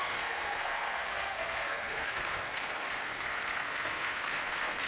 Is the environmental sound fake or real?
fake